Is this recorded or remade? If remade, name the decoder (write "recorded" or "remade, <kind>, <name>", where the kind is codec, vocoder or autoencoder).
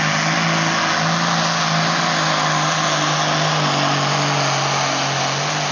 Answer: recorded